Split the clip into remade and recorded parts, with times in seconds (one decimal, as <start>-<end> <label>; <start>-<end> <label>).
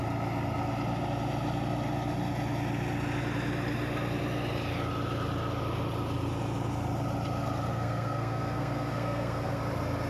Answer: 0.0-7.7 recorded; 7.7-9.6 remade; 9.6-10.1 recorded